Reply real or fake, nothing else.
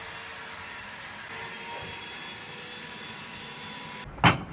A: real